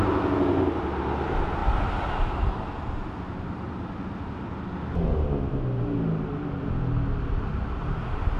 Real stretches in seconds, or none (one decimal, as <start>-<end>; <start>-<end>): 0.0-7.5; 8.0-8.4